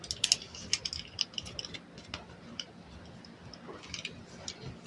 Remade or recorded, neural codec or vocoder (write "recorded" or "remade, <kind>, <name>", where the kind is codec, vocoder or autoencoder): recorded